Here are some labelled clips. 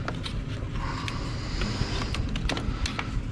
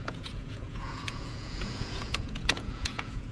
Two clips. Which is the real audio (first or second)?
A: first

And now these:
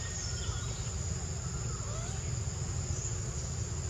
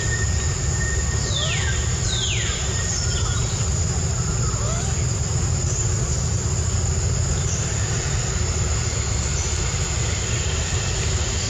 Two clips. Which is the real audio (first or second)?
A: first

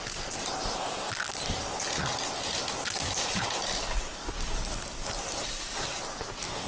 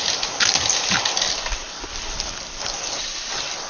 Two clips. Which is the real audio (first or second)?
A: first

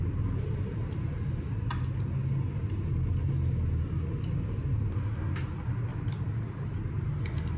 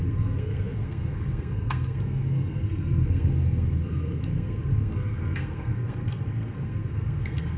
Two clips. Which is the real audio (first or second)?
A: first